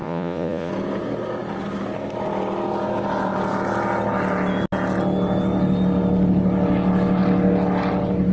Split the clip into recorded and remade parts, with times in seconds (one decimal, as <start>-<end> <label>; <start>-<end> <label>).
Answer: 0.0-0.7 remade; 0.7-8.3 recorded